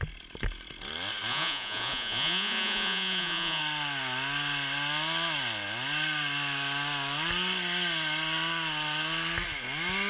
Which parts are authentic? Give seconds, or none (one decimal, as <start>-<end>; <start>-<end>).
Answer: 0.0-1.3; 3.6-10.1